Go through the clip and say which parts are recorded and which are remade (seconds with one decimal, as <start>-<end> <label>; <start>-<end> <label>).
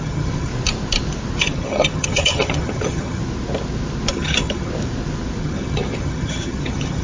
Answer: 0.0-0.5 remade; 0.5-1.4 recorded; 1.4-3.2 remade; 3.2-4.1 recorded; 4.1-4.7 remade; 4.7-5.4 recorded; 5.4-7.0 remade